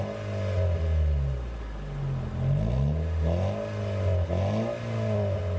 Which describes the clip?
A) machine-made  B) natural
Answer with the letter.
B